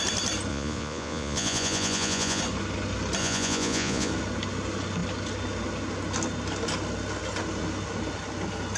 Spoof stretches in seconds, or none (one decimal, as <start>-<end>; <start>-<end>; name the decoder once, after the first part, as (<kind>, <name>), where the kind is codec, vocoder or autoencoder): 0.5-2.4 (vocoder, Vocos); 3.2-4.1